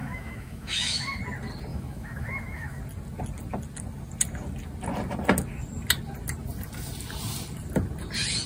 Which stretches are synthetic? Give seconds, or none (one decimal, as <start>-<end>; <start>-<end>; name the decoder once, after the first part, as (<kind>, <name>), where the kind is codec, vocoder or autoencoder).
0.0-1.2 (autoencoder, DAC-VAE); 1.7-2.8